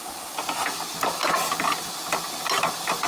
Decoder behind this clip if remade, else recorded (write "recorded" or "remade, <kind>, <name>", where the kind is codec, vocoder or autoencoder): recorded